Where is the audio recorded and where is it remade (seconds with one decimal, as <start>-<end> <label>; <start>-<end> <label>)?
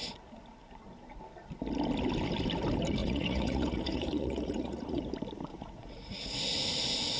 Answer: 0.0-3.0 recorded; 3.0-5.0 remade; 5.0-5.5 recorded; 5.5-6.2 remade; 6.2-7.2 recorded